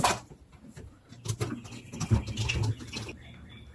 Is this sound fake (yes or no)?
no